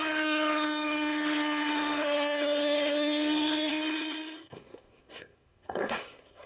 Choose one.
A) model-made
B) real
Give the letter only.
A